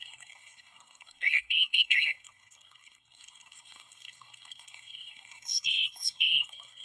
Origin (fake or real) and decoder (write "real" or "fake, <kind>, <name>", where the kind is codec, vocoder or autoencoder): fake, codec, SNAC